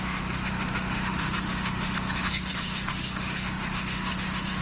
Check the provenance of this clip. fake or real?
fake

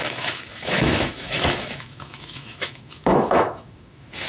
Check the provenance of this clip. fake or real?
fake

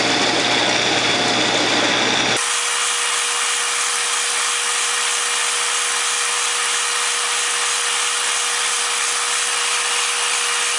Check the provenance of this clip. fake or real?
real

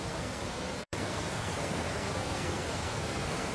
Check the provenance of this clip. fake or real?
fake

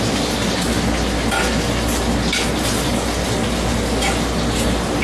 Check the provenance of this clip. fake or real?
real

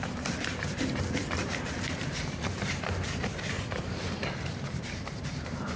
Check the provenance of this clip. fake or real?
fake